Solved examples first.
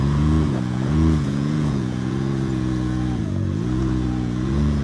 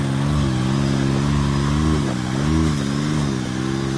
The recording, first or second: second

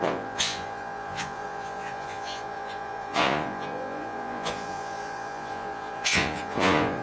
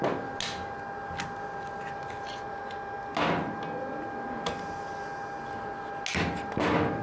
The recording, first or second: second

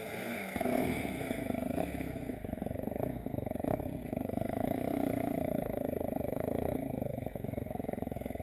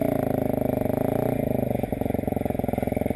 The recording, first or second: second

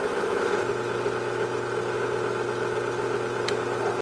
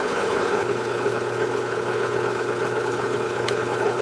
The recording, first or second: first